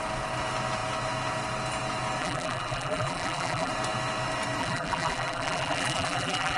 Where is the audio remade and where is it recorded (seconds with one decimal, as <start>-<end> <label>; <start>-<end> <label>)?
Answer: 0.0-2.2 recorded; 2.2-3.7 remade; 3.7-4.6 recorded; 4.6-6.6 remade